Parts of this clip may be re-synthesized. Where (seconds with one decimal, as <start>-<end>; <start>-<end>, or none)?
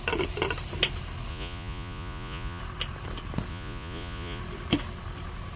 1.3-2.6; 3.5-4.4